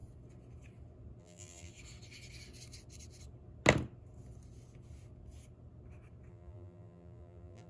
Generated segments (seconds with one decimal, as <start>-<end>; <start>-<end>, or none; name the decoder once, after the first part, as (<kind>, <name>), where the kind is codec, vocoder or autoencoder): 1.2-1.7 (vocoder, BigVGAN v2); 6.3-7.7